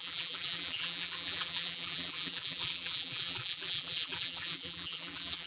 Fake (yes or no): yes